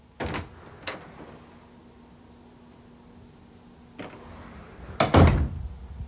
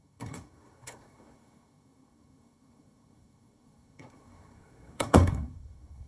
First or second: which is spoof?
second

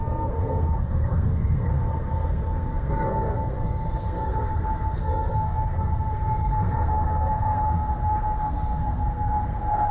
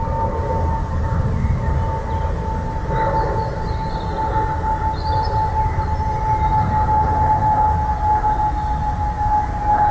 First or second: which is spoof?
first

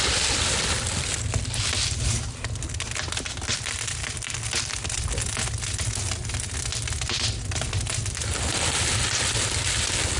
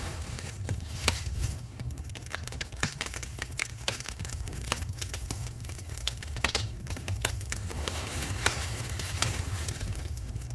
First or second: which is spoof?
second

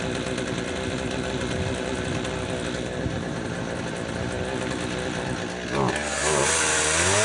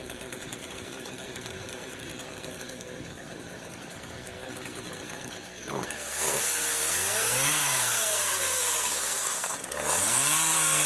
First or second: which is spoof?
second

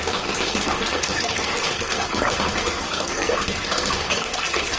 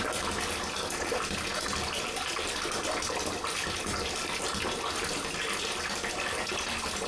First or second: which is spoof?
first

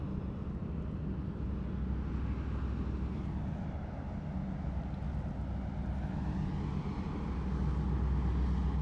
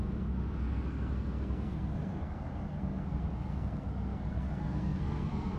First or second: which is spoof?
second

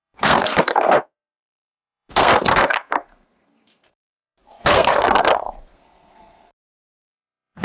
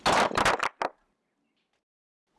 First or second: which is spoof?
first